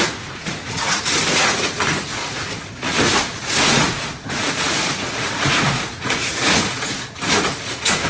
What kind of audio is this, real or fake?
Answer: fake